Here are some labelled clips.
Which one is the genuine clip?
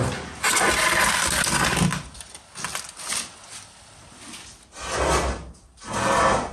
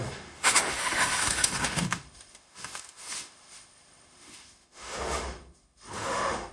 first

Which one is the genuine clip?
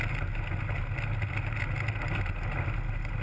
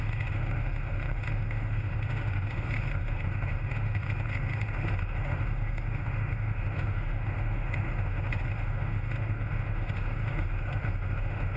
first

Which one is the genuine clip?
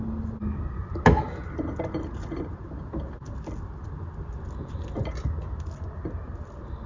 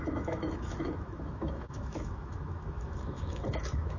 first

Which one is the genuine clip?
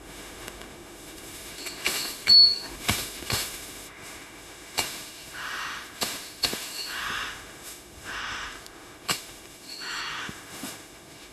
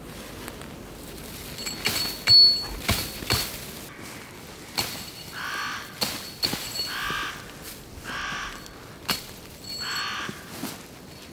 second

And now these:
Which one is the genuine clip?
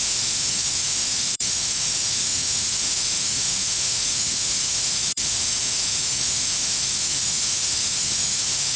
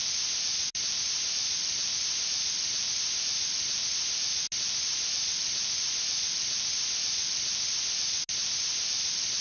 second